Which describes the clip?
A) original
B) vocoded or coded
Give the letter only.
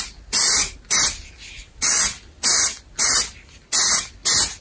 A